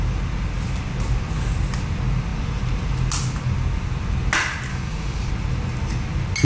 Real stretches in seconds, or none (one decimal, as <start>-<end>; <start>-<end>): 0.0-4.7; 5.3-6.4